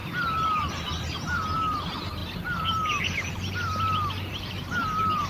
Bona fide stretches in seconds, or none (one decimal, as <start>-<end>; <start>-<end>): 0.0-5.3